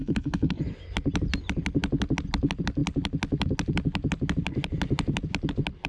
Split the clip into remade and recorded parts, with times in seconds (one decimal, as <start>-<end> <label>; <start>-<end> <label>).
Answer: 0.0-0.6 remade; 0.6-5.9 recorded